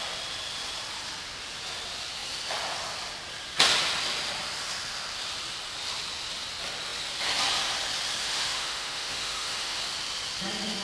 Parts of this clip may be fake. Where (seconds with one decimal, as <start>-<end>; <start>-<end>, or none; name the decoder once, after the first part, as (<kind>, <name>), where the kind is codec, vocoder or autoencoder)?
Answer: 8.2-9.8 (autoencoder, DAC-VAE)